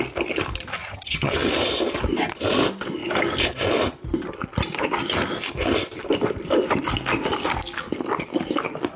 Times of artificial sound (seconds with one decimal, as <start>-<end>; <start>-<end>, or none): 0.8-1.5